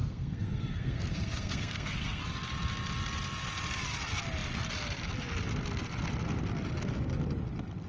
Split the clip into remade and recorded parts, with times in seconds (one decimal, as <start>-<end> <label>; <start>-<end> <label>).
0.0-2.2 remade; 2.2-7.9 recorded